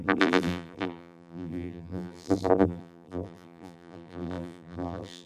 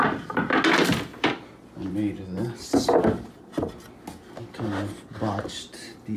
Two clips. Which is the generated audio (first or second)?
first